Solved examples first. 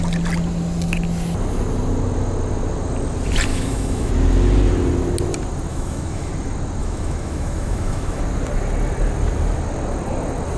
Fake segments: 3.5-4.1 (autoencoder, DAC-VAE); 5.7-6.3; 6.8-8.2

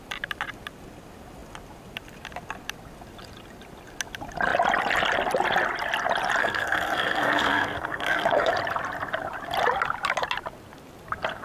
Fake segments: 6.4-8.5 (codec, SNAC)

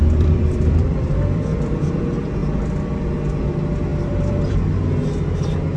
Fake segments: 0.0-2.0 (vocoder, BigVGAN v2); 3.9-4.6

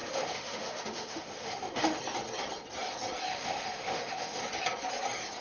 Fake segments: 0.0-2.0 (autoencoder, DAC-VAE); 3.3-4.4

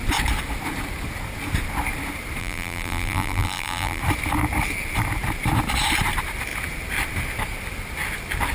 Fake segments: 2.4-4.0 (vocoder, BigVGAN v2)

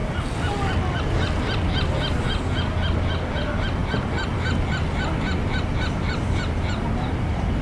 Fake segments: none